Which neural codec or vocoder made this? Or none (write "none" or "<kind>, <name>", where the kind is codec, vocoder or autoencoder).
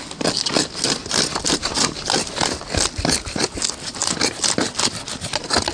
none